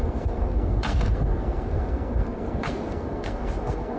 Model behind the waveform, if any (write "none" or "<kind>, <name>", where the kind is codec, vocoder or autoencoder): codec, SNAC